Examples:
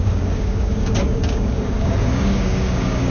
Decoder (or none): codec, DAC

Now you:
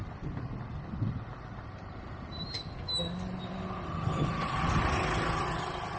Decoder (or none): none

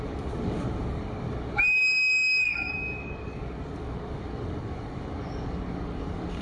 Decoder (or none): codec, DAC